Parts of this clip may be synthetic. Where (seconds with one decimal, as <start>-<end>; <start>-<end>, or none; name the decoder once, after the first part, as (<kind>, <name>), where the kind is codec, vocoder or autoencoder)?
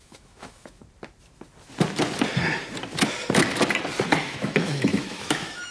0.0-0.8 (autoencoder, DAC-VAE); 4.2-5.7